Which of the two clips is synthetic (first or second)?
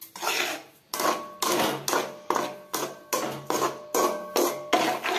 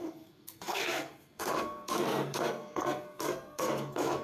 second